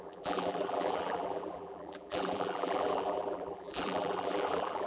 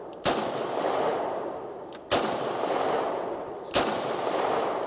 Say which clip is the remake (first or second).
first